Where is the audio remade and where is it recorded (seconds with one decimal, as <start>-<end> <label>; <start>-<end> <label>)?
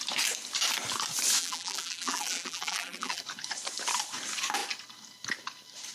0.0-1.4 recorded; 1.4-3.2 remade; 3.2-5.9 recorded